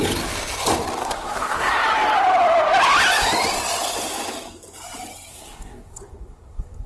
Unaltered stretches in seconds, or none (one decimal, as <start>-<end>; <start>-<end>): 0.0-1.0; 1.7-5.3